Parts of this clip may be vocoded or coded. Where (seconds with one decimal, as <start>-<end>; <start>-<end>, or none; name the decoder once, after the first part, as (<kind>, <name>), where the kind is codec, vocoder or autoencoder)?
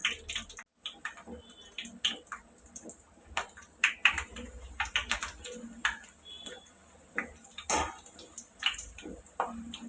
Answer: 2.9-5.0 (vocoder, BigVGAN v2); 6.3-6.8; 8.6-9.9